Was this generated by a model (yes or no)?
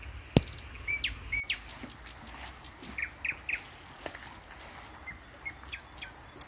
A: no